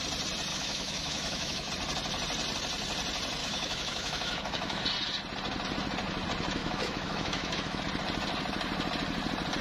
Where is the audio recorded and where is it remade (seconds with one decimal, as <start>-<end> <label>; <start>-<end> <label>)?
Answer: 0.0-0.5 recorded; 0.5-1.7 remade; 1.7-3.4 recorded; 3.4-4.8 remade; 4.8-6.6 recorded; 6.6-7.8 remade; 7.8-9.6 recorded